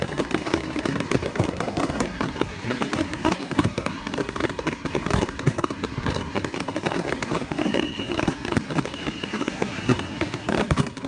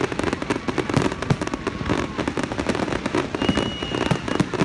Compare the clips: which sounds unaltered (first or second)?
second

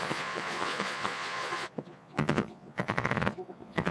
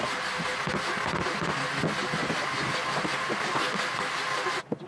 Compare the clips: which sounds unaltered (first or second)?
second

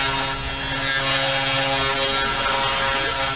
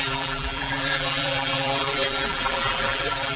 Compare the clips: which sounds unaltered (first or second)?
first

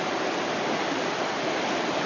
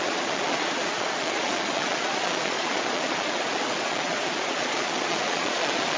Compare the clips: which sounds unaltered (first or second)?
first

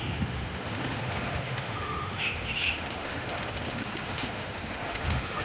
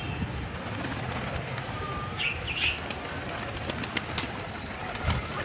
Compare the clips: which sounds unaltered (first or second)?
second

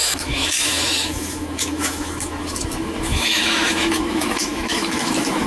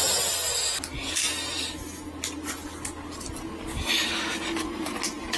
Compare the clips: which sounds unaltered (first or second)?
second